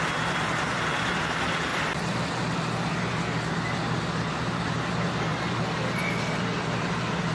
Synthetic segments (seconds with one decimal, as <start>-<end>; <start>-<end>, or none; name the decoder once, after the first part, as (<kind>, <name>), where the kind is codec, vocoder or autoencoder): none